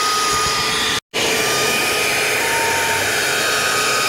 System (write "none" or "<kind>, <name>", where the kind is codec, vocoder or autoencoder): none